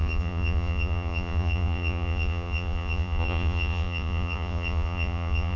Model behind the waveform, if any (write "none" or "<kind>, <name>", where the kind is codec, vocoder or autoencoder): vocoder, Vocos